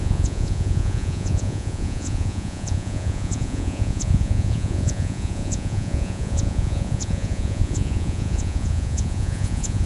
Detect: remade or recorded remade